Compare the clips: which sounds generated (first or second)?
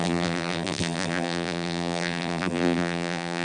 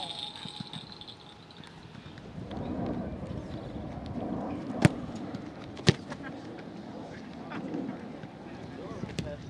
first